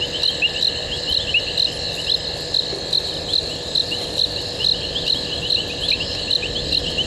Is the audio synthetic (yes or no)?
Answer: no